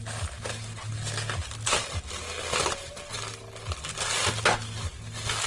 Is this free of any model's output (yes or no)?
yes